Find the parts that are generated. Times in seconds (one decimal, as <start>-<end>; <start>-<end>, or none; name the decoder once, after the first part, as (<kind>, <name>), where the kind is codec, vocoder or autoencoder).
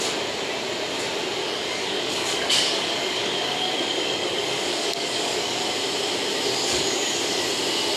1.4-5.6 (codec, DAC); 6.5-7.4